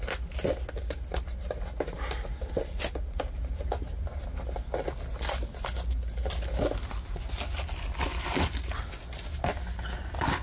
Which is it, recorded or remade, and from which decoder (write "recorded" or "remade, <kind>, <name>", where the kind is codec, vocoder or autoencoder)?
recorded